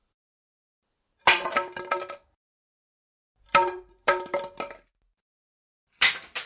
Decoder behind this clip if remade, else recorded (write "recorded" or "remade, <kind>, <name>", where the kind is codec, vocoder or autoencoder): recorded